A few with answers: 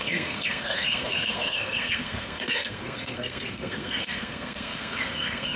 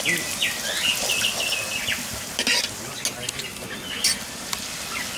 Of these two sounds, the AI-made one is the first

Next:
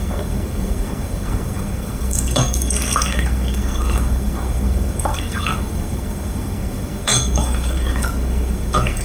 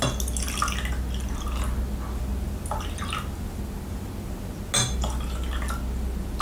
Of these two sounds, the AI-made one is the first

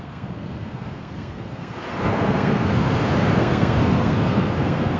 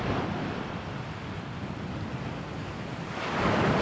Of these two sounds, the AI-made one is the first